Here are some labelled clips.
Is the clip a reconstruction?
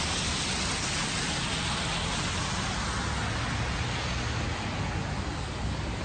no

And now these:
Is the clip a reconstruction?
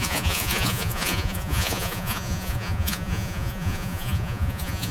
yes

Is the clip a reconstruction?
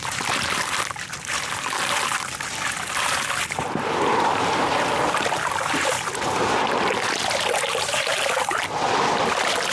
no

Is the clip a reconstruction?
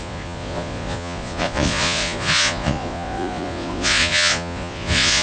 yes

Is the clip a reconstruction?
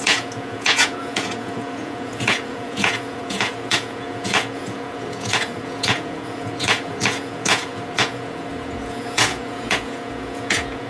yes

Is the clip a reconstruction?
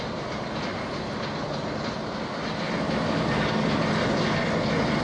no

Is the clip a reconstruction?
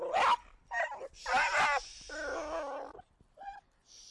no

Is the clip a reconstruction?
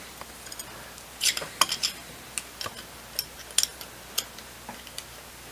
no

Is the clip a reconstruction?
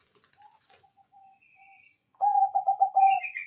yes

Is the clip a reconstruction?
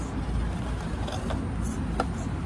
no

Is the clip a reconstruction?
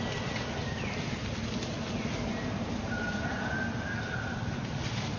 no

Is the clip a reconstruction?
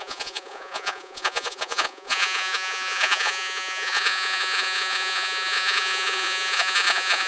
yes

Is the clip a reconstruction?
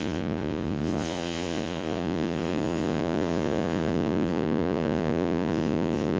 yes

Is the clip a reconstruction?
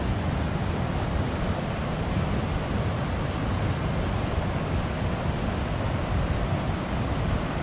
no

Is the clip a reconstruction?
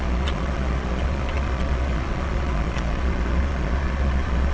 yes